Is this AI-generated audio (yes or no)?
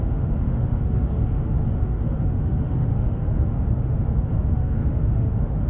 yes